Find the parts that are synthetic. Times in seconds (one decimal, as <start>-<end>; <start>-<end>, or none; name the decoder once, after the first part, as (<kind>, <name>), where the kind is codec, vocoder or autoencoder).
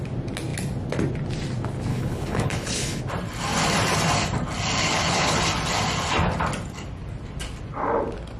1.9-3.0 (codec, HILCodec); 4.8-5.4